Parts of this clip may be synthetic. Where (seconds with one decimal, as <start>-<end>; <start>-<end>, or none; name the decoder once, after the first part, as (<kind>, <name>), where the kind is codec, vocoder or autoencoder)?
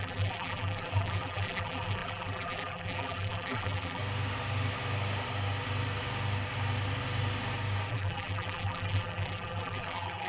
0.0-4.0 (vocoder, BigVGAN v2); 7.9-10.3